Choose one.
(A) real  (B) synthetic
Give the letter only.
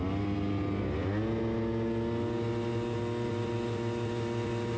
A